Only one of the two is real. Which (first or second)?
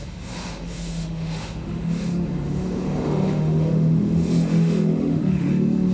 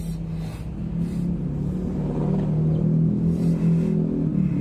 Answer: second